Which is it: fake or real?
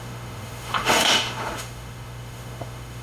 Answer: fake